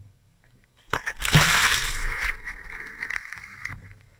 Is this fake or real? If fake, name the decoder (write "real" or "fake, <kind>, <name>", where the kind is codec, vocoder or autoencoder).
fake, codec, SNAC